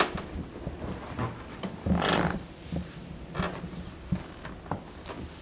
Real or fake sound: real